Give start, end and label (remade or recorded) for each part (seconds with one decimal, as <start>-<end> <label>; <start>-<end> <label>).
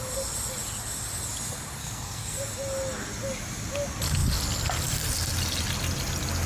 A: 0.0-1.8 recorded; 1.8-2.4 remade; 2.4-6.5 recorded